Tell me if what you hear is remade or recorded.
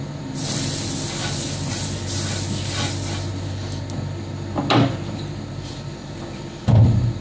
recorded